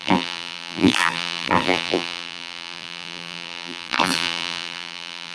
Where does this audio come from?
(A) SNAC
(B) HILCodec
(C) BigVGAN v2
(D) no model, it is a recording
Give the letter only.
C